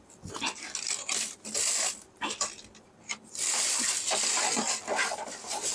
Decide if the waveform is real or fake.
real